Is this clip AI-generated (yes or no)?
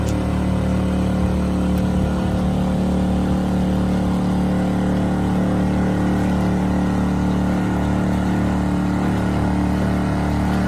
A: no